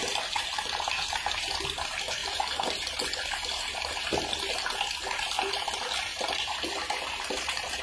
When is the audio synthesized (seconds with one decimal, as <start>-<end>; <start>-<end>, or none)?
0.0-1.5; 2.2-2.9; 3.5-4.2; 6.1-7.8